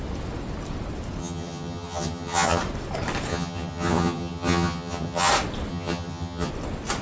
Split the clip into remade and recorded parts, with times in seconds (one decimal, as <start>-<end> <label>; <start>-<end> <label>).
0.0-1.2 recorded; 1.2-2.6 remade; 2.6-3.3 recorded; 3.3-5.3 remade; 5.3-5.7 recorded; 5.7-6.5 remade; 6.5-7.0 recorded